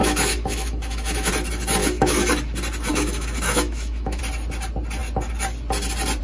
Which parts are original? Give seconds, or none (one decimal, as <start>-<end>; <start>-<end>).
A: 1.3-1.8; 2.3-2.9; 4.2-6.2